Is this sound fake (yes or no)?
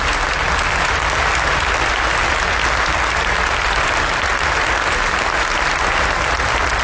no